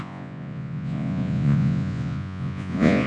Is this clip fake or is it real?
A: fake